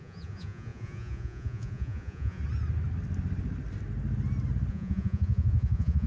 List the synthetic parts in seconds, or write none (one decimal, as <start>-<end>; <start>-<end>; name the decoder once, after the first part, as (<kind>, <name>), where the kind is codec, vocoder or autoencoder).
0.0-2.4 (vocoder, Vocos); 4.7-6.1

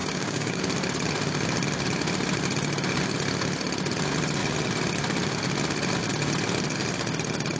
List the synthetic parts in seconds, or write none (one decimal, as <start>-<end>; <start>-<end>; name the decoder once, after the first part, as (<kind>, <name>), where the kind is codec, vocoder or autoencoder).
0.0-0.6 (codec, DAC)